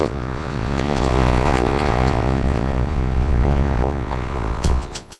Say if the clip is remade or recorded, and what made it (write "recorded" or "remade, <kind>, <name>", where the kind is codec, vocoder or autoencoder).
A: remade, vocoder, Vocos